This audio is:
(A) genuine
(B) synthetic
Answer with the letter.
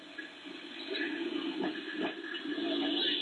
A